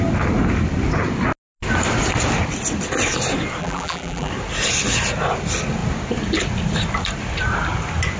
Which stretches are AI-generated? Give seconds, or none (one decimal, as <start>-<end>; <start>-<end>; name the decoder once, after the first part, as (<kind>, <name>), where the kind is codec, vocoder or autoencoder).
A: 3.6-4.3 (vocoder, BigVGAN v2)